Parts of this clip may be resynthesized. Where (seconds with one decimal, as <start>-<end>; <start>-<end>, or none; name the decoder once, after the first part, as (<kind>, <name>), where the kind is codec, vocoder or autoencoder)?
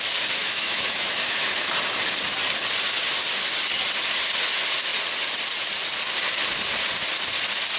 0.4-1.7 (autoencoder, DAC-VAE)